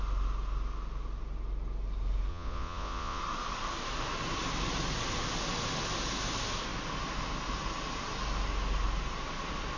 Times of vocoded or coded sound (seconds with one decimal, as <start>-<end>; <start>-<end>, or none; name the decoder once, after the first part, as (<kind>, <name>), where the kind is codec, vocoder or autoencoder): 2.3-3.2 (vocoder, Vocos)

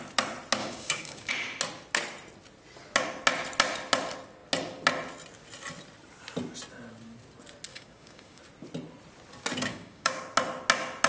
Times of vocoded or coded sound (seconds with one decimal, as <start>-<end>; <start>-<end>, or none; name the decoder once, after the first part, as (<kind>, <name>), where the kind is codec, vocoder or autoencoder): 0.6-1.3 (codec, DAC); 7.7-8.4; 9.7-10.2

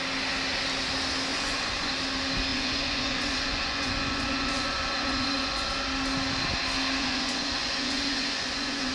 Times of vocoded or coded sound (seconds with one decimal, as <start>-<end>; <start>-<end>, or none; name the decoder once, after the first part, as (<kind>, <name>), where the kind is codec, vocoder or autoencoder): 1.3-1.9 (vocoder, Vocos); 2.5-5.7; 7.0-8.9

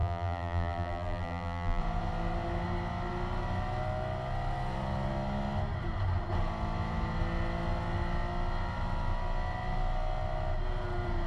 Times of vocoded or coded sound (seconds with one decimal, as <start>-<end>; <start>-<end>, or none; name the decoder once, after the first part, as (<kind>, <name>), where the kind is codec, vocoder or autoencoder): 0.0-1.8 (vocoder, BigVGAN v2)